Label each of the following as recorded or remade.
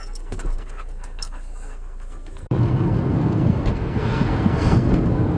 remade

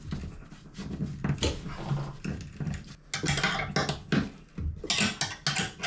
recorded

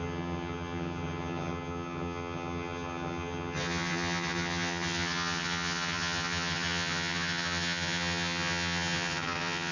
remade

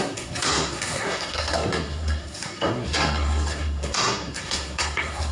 remade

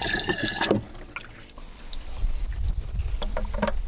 recorded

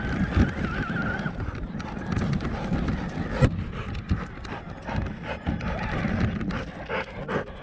recorded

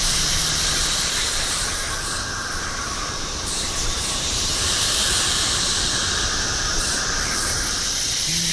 remade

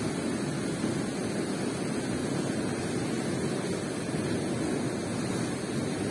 recorded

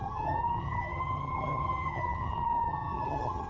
remade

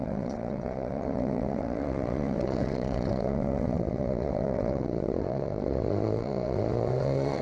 remade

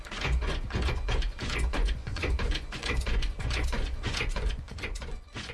remade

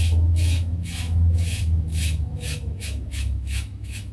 remade